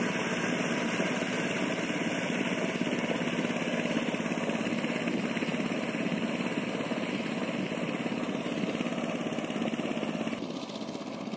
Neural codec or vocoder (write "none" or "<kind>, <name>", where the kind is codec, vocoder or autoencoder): none